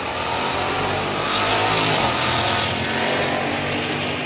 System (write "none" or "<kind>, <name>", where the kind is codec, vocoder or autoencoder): none